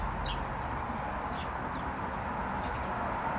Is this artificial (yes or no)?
no